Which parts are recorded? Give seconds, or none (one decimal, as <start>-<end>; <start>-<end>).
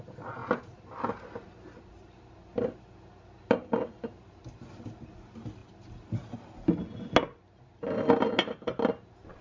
0.0-9.4